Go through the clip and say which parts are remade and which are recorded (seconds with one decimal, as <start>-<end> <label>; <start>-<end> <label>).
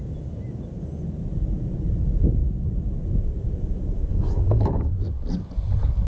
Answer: 0.0-4.1 recorded; 4.1-4.9 remade; 4.9-6.1 recorded